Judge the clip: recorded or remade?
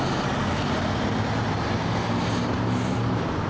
recorded